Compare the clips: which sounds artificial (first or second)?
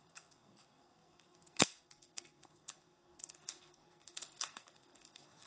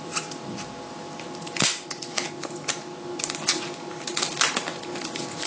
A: first